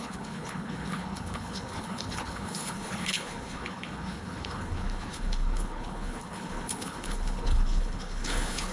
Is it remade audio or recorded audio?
remade